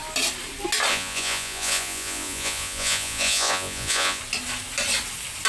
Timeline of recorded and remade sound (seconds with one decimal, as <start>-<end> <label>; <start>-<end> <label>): 0.0-0.9 recorded; 0.9-4.2 remade; 4.2-5.5 recorded